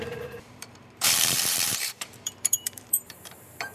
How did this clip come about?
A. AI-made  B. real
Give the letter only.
A